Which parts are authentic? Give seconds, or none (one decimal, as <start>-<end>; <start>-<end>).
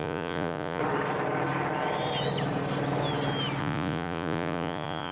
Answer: 0.8-3.6